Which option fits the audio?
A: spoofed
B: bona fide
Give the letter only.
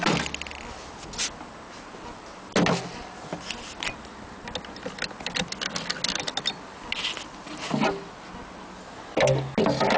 B